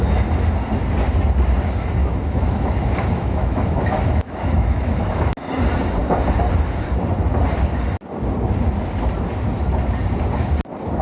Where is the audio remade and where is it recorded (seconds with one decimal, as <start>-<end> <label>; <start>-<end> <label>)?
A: 0.0-2.0 recorded; 2.0-5.3 remade; 5.3-11.0 recorded